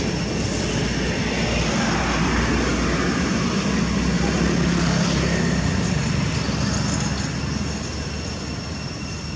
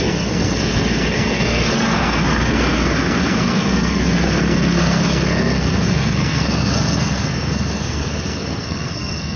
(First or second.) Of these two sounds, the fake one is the second